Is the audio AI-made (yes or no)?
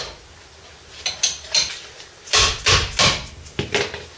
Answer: no